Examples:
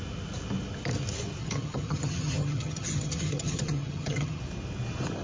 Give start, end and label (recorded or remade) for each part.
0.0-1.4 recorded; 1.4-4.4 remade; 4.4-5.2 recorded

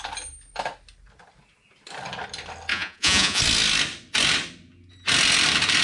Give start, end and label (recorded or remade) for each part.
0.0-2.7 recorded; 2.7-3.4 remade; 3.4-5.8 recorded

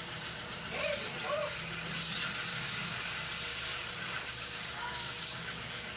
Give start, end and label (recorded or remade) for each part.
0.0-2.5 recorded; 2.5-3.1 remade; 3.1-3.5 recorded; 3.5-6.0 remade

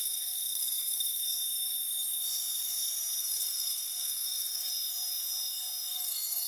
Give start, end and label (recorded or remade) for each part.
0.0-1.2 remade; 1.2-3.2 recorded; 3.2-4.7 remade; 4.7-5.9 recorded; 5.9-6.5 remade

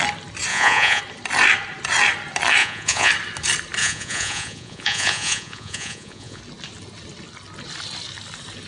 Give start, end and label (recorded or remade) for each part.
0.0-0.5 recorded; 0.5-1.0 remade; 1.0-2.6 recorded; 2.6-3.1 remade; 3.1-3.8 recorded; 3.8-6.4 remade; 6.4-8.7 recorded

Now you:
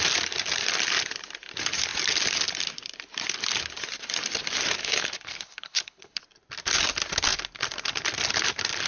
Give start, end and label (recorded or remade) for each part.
0.0-4.8 recorded; 4.8-6.2 remade; 6.2-8.9 recorded

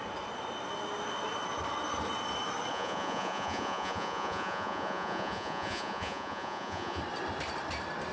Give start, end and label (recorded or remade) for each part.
0.0-2.7 recorded; 2.7-7.0 remade; 7.0-8.1 recorded

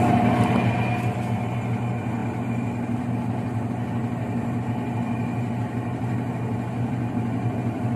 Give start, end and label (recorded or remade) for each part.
0.0-8.0 recorded